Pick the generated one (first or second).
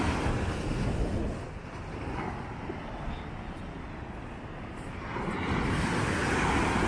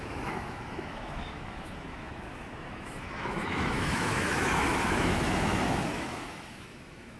second